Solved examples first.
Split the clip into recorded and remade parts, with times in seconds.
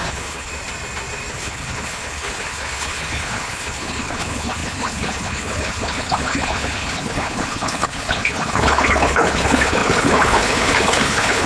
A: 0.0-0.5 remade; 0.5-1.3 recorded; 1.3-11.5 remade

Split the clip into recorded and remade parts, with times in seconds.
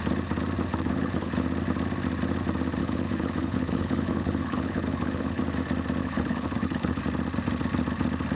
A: 0.0-0.7 recorded; 0.7-1.3 remade; 1.3-2.8 recorded; 2.8-5.4 remade; 5.4-6.0 recorded; 6.0-7.0 remade; 7.0-8.4 recorded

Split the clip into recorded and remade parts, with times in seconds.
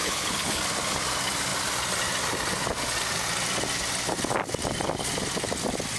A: 0.0-0.6 remade; 0.6-6.0 recorded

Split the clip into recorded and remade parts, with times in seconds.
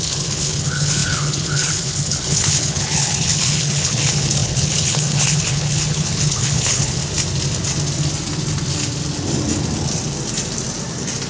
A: 0.0-7.0 remade; 7.0-11.3 recorded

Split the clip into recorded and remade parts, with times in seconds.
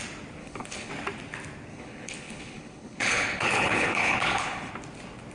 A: 0.0-0.4 recorded; 0.4-0.9 remade; 0.9-1.7 recorded; 1.7-4.7 remade; 4.7-5.3 recorded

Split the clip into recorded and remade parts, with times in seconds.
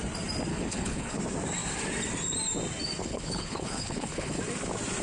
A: 0.0-0.5 recorded; 0.5-1.2 remade; 1.2-3.0 recorded; 3.0-4.4 remade; 4.4-5.0 recorded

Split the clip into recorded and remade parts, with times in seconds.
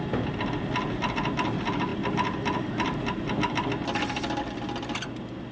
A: 0.0-5.5 recorded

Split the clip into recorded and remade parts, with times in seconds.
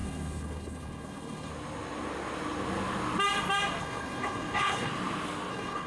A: 0.0-1.5 remade; 1.5-3.8 recorded; 3.8-4.9 remade; 4.9-5.5 recorded; 5.5-5.9 remade